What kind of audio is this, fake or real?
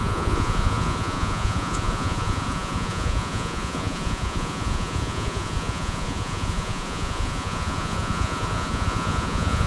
fake